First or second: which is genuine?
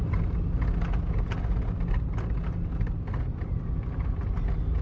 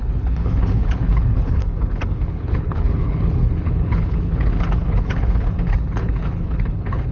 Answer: first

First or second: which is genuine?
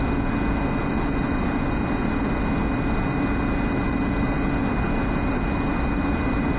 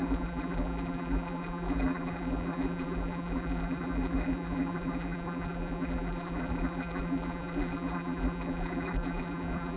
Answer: first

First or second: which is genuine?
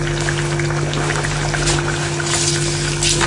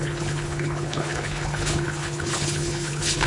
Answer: first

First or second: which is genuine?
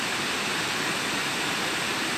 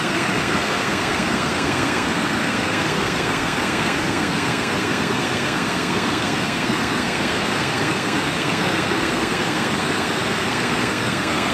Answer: first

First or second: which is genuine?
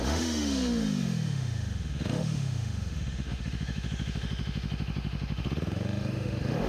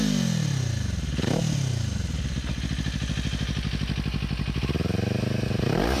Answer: second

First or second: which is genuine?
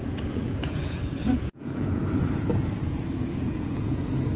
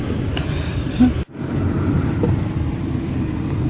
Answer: second